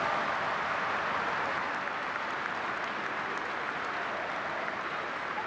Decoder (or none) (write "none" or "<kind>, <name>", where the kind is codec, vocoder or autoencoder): none